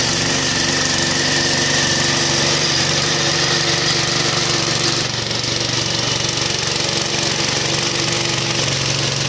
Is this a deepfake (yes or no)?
no